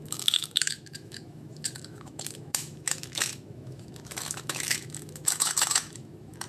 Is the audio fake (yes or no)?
yes